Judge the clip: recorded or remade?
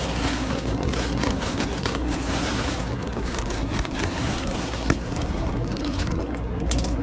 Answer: remade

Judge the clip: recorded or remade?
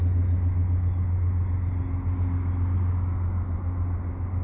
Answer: recorded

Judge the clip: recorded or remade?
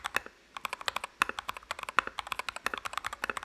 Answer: recorded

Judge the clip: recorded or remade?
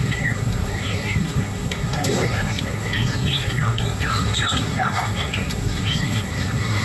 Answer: remade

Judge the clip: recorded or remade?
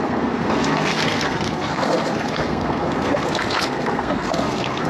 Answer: remade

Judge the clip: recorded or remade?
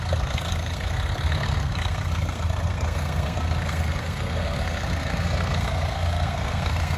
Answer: remade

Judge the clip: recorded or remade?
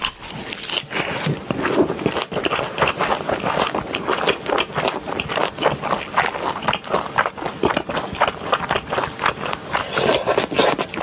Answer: recorded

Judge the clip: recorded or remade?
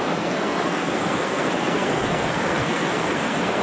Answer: remade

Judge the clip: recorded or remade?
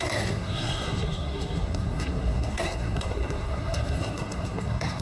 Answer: remade